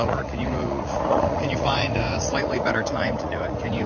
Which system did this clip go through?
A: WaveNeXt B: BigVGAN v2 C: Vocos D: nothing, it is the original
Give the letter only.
C